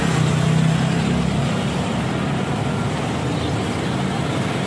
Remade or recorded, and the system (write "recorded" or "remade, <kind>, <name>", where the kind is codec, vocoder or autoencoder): recorded